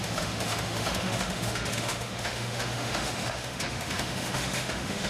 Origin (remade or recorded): remade